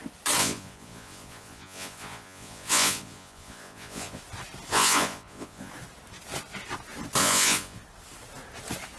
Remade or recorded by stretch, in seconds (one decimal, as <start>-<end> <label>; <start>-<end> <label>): 0.0-0.4 recorded; 0.4-4.2 remade; 4.2-4.7 recorded; 4.7-5.7 remade; 5.7-7.2 recorded; 7.2-7.8 remade; 7.8-9.0 recorded